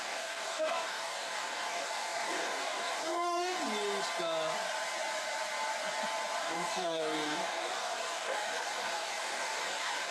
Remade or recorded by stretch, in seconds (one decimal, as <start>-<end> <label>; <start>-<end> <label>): 0.0-3.6 remade; 3.6-6.4 recorded; 6.4-10.1 remade